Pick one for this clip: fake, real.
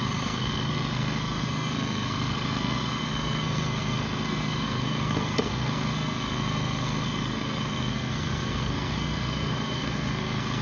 fake